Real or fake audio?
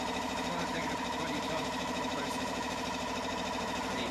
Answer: fake